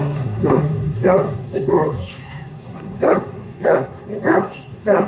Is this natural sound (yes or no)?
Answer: no